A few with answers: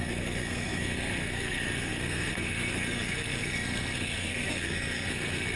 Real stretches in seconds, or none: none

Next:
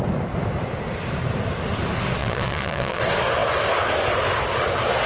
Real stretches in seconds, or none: 0.0-2.2; 3.0-5.1

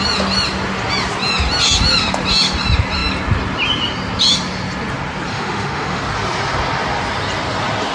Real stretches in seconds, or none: 0.0-5.3; 6.0-7.9

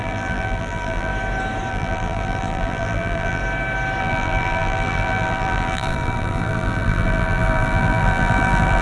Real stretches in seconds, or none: 1.1-1.7; 3.4-4.0